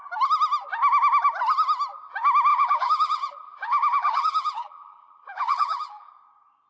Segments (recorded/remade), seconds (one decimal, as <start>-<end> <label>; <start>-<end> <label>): 0.0-2.5 recorded; 2.5-6.1 remade; 6.1-6.7 recorded